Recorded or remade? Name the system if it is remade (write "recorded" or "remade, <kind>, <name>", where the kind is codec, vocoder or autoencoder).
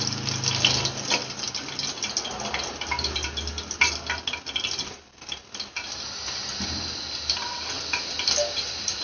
recorded